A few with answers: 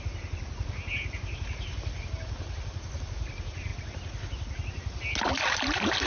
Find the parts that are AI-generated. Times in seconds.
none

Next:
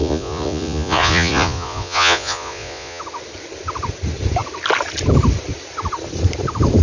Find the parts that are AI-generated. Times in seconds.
0.0-3.0 (vocoder, Vocos)

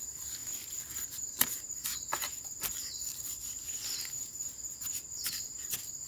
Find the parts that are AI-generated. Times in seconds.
none

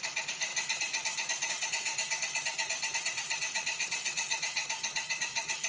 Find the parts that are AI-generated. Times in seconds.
0.0-0.5 (vocoder, Vocos); 1.5-1.9; 3.0-4.6; 5.2-5.7

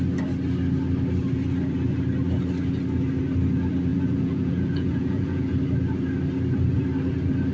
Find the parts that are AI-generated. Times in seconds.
3.9-5.5 (vocoder, Vocos)

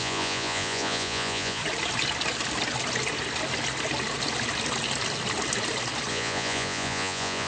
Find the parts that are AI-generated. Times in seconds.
0.0-1.6 (vocoder, Vocos); 6.1-7.5